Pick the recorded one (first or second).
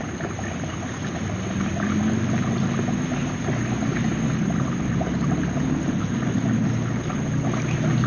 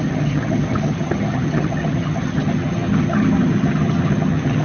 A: first